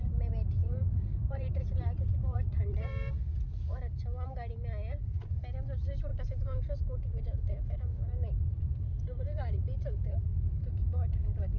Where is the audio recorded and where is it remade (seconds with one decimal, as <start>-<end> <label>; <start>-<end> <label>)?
0.0-0.6 recorded; 0.6-3.1 remade; 3.1-6.1 recorded; 6.1-9.0 remade; 9.0-11.6 recorded